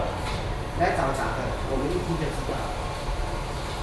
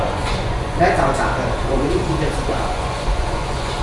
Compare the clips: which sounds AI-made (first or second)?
second